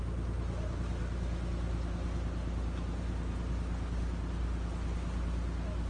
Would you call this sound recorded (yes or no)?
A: yes